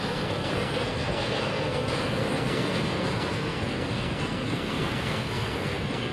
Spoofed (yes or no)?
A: yes